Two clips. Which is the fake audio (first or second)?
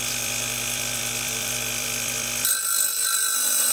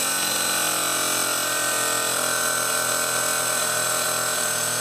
first